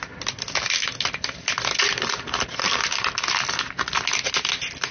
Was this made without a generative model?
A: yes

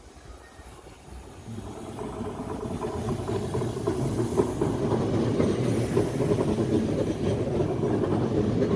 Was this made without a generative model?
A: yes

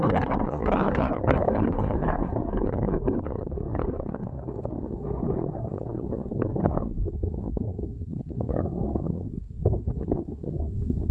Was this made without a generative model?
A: no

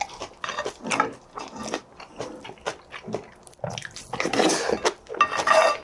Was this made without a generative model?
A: yes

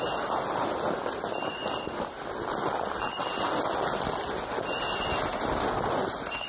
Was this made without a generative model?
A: yes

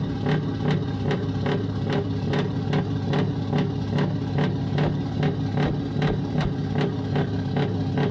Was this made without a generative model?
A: yes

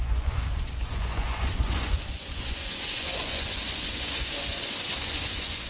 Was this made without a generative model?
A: no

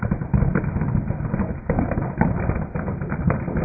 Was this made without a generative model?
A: yes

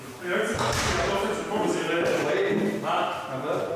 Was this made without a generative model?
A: yes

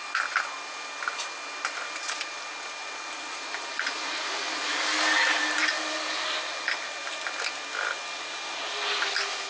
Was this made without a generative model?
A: yes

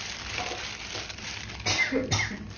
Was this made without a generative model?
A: yes